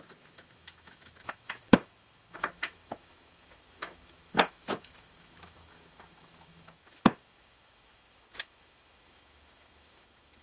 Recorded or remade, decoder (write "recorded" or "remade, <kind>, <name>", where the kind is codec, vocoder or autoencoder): remade, autoencoder, DAC-VAE